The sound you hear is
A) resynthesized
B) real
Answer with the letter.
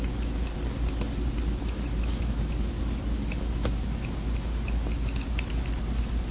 B